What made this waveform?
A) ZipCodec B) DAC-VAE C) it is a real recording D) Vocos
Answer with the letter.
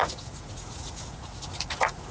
D